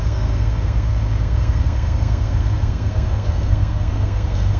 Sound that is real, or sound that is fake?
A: fake